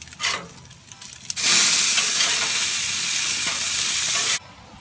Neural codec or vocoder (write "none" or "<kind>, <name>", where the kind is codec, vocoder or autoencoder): none